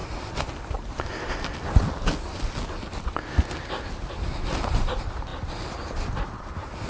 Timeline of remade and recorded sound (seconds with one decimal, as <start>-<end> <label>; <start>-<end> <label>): 0.0-6.9 recorded